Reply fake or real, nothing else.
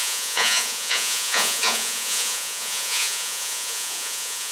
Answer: fake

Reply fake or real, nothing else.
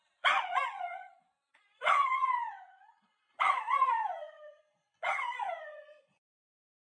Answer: fake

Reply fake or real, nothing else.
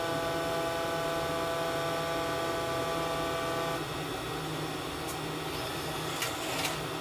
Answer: real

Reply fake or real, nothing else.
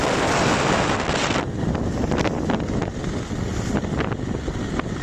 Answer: real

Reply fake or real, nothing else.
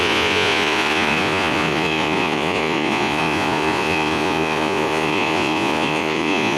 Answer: fake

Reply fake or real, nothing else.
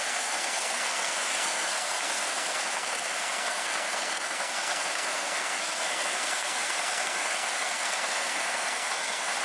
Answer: fake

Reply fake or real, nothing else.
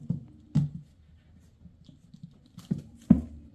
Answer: real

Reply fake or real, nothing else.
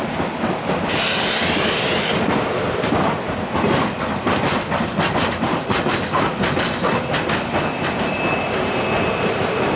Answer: real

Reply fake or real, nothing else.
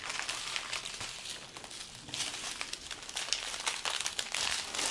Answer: real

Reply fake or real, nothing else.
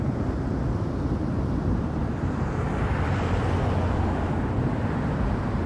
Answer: fake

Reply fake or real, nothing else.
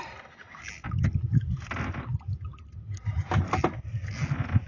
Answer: real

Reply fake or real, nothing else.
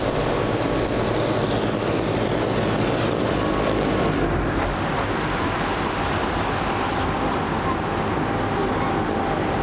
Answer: real